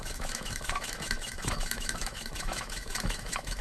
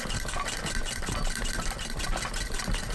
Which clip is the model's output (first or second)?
first